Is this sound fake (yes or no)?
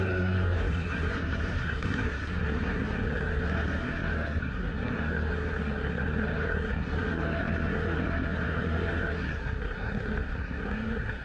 yes